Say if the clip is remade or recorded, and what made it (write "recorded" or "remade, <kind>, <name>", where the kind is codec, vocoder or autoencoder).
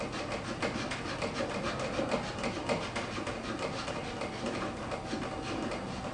recorded